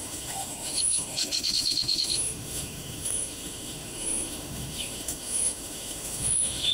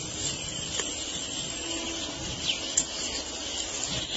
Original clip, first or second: second